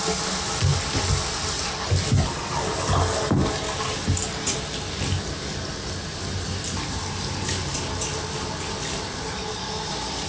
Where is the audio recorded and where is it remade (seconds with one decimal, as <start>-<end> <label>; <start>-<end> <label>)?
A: 0.0-10.3 recorded